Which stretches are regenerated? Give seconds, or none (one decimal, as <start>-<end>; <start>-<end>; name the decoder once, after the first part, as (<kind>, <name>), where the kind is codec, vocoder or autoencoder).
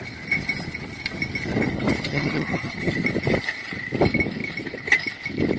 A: 2.1-2.9 (vocoder, HiFi-GAN)